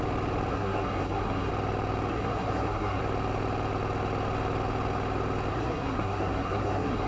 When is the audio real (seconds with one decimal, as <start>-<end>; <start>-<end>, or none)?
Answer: 0.0-0.5; 1.5-2.1; 3.0-5.5